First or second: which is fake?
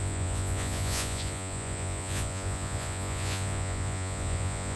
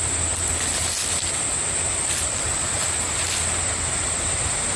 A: first